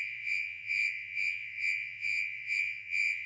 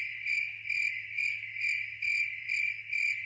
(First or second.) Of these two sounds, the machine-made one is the first